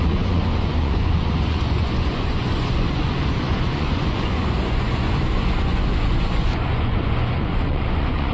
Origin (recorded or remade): remade